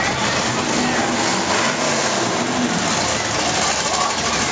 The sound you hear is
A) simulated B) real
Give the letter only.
B